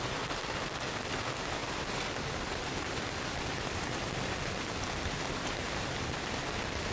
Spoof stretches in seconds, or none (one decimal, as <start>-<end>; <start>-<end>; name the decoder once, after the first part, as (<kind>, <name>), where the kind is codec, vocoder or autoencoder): none